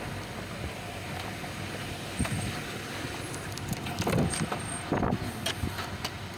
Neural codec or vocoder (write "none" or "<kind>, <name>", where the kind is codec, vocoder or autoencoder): none